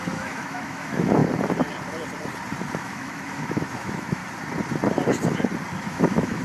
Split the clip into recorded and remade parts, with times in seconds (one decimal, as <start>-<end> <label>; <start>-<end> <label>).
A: 0.0-1.2 remade; 1.2-2.7 recorded; 2.7-4.2 remade; 4.2-5.8 recorded; 5.8-6.4 remade